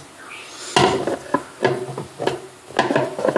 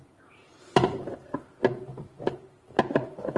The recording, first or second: first